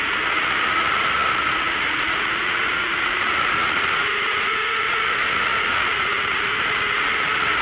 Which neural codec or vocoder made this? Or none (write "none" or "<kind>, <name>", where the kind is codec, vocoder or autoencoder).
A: vocoder, Vocos